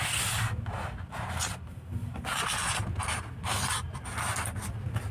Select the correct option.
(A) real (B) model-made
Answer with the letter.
A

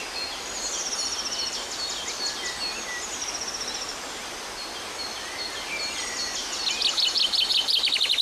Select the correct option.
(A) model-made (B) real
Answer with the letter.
B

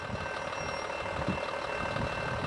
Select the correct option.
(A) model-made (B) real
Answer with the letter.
B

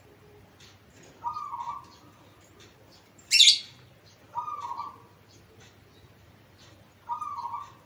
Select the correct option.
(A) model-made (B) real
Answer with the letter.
B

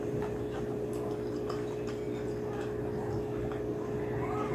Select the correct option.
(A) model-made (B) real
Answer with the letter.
B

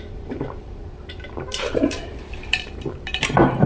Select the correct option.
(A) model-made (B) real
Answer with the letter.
A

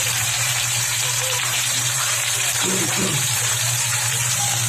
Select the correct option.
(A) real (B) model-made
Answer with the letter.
B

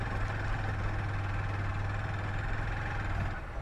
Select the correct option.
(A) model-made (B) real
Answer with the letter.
B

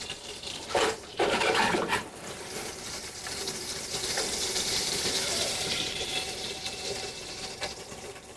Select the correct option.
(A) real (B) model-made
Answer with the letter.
B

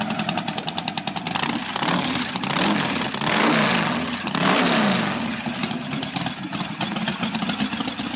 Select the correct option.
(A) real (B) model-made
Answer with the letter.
A